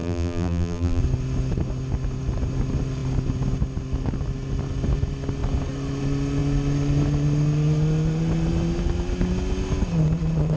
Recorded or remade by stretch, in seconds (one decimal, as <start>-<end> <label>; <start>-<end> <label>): 0.0-1.0 remade; 1.0-10.6 recorded